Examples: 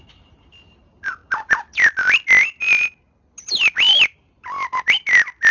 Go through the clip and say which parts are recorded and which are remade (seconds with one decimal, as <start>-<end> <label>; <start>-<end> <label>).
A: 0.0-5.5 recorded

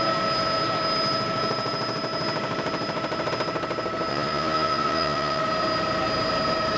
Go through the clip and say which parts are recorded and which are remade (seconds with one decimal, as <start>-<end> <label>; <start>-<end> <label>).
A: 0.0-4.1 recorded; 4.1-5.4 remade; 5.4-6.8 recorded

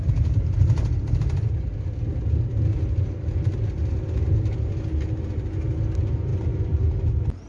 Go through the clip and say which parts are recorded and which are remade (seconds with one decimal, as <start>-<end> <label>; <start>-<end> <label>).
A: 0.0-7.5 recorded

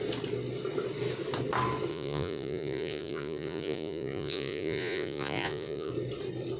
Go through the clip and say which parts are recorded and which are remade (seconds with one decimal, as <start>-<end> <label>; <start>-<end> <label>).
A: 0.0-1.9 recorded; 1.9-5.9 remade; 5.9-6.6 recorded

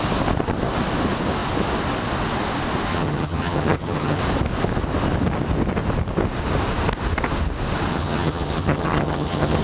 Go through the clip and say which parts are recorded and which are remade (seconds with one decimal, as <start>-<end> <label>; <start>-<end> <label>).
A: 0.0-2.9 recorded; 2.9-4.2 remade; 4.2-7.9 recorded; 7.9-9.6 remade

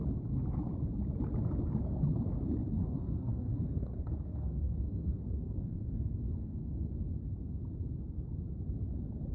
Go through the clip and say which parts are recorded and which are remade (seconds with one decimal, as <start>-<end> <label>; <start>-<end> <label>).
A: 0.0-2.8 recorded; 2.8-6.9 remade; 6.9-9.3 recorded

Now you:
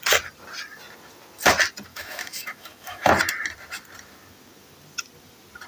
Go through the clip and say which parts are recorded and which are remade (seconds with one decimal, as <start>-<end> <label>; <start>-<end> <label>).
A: 0.0-1.9 recorded; 1.9-3.1 remade; 3.1-5.7 recorded

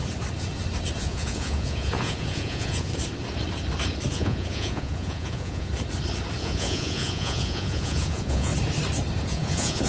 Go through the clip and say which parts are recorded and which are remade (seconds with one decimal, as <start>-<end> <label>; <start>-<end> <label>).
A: 0.0-1.0 recorded; 1.0-2.9 remade; 2.9-4.1 recorded; 4.1-5.7 remade; 5.7-6.4 recorded; 6.4-8.5 remade; 8.5-9.2 recorded; 9.2-9.9 remade